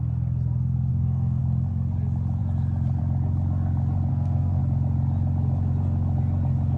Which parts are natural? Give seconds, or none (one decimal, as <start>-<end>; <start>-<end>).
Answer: 0.0-0.9; 1.4-4.1; 4.6-6.8